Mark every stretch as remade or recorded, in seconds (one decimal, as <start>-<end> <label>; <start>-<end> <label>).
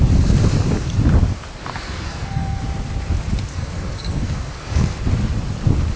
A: 0.0-1.7 recorded; 1.7-2.6 remade; 2.6-3.5 recorded; 3.5-5.0 remade; 5.0-6.0 recorded